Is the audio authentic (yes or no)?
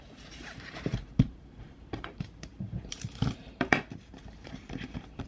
no